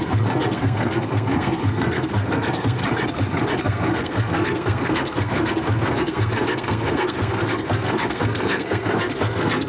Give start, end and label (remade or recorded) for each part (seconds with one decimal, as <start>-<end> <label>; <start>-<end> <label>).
0.0-2.8 remade; 2.8-3.6 recorded; 3.6-9.7 remade

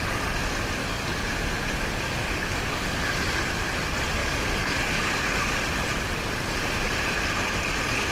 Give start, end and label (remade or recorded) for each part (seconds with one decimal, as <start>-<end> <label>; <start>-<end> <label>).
0.0-0.8 recorded; 0.8-1.3 remade; 1.3-2.2 recorded; 2.2-3.1 remade; 3.1-4.2 recorded; 4.2-5.6 remade; 5.6-8.1 recorded